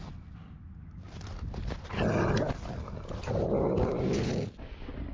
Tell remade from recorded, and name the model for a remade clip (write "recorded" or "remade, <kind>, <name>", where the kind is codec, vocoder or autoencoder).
recorded